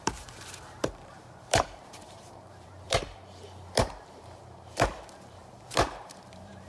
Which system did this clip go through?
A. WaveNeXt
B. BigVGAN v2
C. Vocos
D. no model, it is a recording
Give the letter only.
B